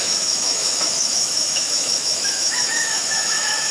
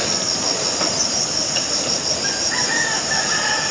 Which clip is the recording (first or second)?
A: second